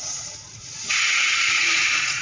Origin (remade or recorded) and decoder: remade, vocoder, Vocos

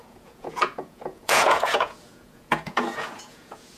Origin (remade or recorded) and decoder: remade, vocoder, Vocos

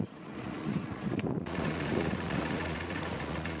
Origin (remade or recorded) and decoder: remade, vocoder, Vocos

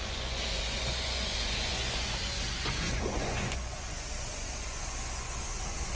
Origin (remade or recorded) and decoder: remade, vocoder, Vocos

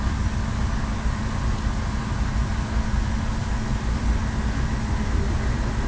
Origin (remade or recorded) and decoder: recorded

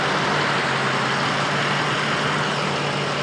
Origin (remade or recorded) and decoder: recorded